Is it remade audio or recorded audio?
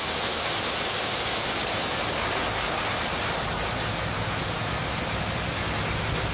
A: recorded